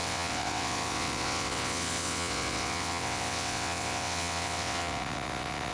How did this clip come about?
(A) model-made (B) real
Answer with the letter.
A